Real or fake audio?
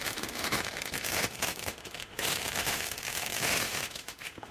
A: fake